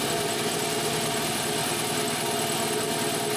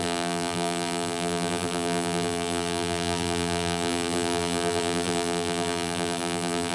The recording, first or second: first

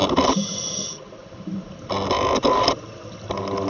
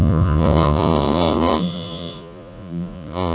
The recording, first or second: first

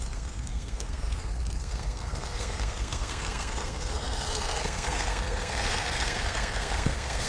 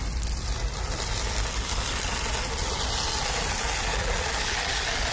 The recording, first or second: second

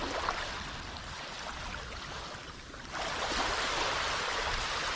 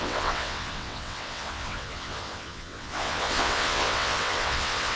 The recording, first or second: first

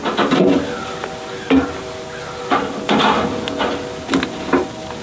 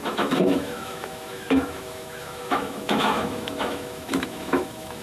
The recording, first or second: first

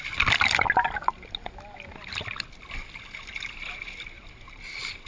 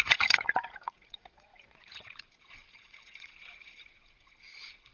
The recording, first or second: first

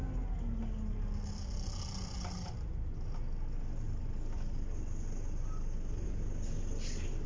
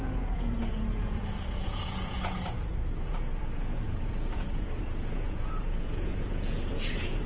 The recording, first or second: first